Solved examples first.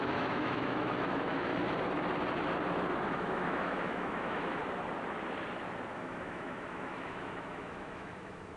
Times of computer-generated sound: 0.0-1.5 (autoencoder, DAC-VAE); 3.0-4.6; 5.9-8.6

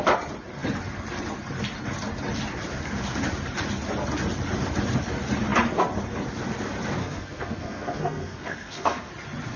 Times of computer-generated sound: 7.0-9.1 (codec, SNAC)